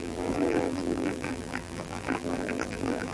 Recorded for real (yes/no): no